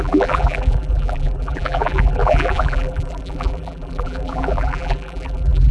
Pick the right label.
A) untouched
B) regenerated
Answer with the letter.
B